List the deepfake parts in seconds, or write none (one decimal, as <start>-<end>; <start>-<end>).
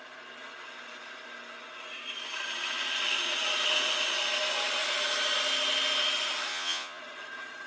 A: 6.5-7.0